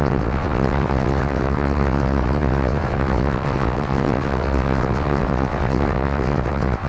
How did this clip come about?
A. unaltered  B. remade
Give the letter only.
B